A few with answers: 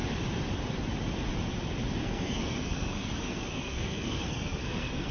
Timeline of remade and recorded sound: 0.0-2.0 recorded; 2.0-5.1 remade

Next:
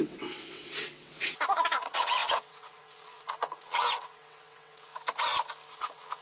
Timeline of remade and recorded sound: 0.0-4.9 remade; 4.9-5.7 recorded; 5.7-6.2 remade

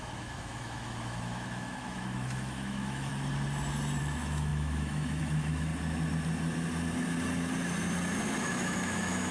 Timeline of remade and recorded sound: 0.0-3.1 remade; 3.1-4.0 recorded; 4.0-5.7 remade; 5.7-8.4 recorded; 8.4-9.3 remade

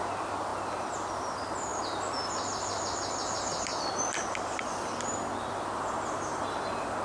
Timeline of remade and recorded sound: 0.0-7.0 recorded

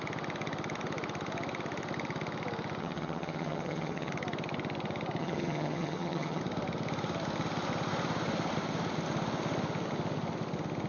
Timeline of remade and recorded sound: 0.0-2.8 recorded; 2.8-4.1 remade; 4.1-5.2 recorded; 5.2-6.4 remade; 6.4-10.9 recorded

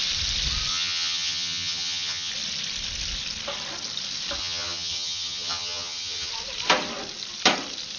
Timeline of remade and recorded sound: 0.0-0.7 recorded; 0.7-2.3 remade; 2.3-4.4 recorded; 4.4-6.3 remade; 6.3-8.0 recorded